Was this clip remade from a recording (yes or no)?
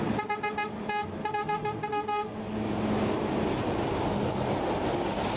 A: no